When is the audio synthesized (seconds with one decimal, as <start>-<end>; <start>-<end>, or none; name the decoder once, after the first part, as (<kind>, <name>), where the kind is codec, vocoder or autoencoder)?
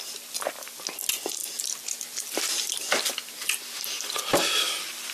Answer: none